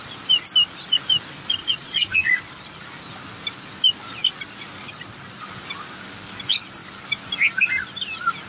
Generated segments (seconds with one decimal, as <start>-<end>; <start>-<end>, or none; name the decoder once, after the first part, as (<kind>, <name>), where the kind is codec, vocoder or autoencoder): 1.6-2.4 (vocoder, Vocos)